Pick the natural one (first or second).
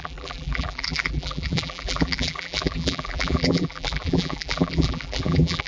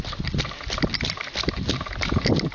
second